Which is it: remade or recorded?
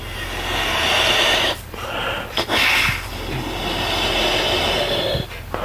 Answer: recorded